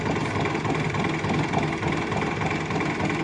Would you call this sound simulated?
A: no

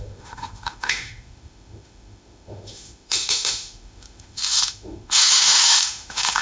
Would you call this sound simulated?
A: yes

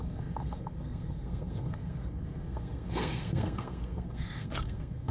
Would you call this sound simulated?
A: yes